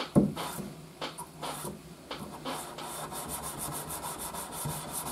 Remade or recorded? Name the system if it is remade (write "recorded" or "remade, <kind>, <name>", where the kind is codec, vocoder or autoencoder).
remade, vocoder, BigVGAN v2